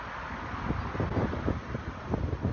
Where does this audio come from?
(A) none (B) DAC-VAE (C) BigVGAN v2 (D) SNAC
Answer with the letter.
A